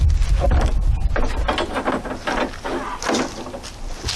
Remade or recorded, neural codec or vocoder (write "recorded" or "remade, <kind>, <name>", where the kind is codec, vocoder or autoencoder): recorded